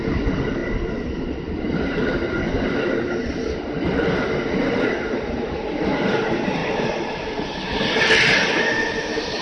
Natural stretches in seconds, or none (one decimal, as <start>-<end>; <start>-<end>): 0.0-9.4